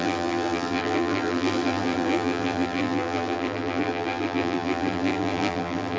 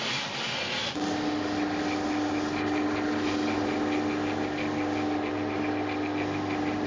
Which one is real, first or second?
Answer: second